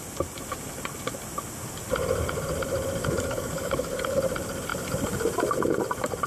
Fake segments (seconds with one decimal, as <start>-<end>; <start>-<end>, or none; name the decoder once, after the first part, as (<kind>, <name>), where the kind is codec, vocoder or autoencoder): 3.0-4.2 (codec, DAC)